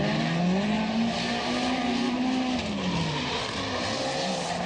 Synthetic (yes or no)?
no